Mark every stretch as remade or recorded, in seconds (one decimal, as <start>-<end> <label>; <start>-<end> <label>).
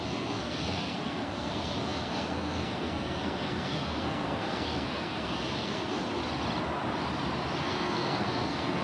0.0-6.2 remade; 6.2-7.6 recorded; 7.6-8.8 remade